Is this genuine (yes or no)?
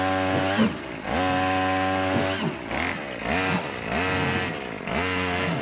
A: yes